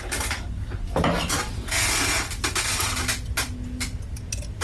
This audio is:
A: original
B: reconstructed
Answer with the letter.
A